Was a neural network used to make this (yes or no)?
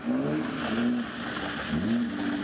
no